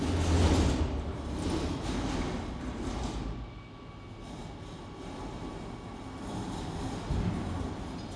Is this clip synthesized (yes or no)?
no